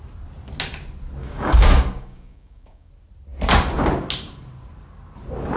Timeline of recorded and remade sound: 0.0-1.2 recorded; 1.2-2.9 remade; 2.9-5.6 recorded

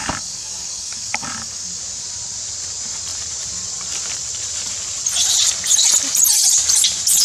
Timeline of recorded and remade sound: 0.0-1.8 remade; 1.8-7.2 recorded

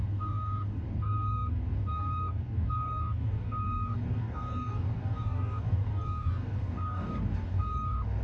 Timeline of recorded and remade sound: 0.0-8.2 remade

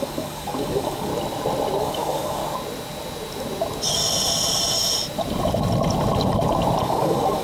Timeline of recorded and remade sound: 0.0-1.1 remade; 1.1-1.8 recorded; 1.8-2.4 remade; 2.4-6.8 recorded; 6.8-7.4 remade

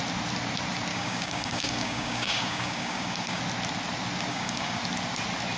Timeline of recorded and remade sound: 0.0-0.9 recorded; 0.9-3.4 remade; 3.4-4.3 recorded; 4.3-4.8 remade; 4.8-5.6 recorded

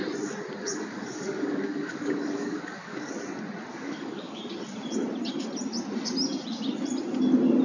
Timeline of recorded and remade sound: 0.0-0.6 recorded; 0.6-3.1 remade; 3.1-3.7 recorded; 3.7-4.4 remade; 4.4-7.6 recorded

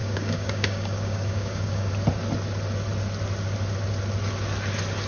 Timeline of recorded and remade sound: 0.0-1.9 remade; 1.9-5.1 recorded